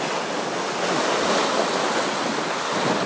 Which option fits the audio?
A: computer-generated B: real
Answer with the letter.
B